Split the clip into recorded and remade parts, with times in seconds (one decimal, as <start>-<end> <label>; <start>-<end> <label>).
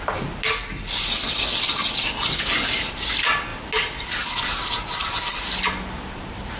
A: 0.0-6.6 recorded